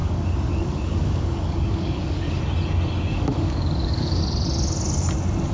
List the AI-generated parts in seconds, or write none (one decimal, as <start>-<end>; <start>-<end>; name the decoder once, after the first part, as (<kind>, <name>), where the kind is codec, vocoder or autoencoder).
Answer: 0.0-2.4 (codec, DAC); 3.1-4.2